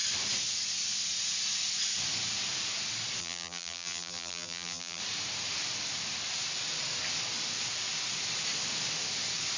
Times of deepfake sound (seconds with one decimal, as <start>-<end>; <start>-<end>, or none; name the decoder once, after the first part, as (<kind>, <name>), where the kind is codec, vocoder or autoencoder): 3.2-5.0 (vocoder, BigVGAN v2)